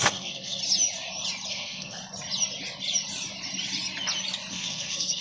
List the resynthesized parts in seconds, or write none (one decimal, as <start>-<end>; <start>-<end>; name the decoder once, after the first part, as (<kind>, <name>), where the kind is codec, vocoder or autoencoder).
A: 0.0-0.6 (codec, SNAC); 1.5-2.0; 4.5-5.2